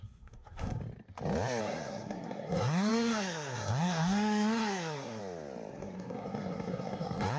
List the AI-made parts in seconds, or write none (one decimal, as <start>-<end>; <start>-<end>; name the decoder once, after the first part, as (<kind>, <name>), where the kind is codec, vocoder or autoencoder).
0.0-0.8 (codec, SNAC); 1.6-5.2; 5.7-7.4